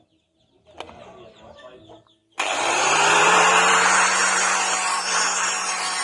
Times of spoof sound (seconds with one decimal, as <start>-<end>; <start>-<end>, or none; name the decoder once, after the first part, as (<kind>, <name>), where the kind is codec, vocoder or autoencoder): 2.2-6.0 (vocoder, BigVGAN v2)